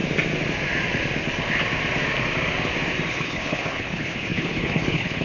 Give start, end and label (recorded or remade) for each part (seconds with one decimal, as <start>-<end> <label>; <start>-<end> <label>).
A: 0.0-3.1 recorded; 3.1-5.2 remade